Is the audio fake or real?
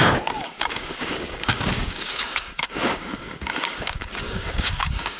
fake